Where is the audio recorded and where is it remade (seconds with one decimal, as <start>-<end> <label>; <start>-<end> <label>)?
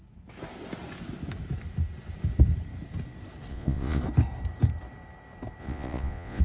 0.0-3.5 recorded; 3.5-4.0 remade; 4.0-5.6 recorded; 5.6-6.4 remade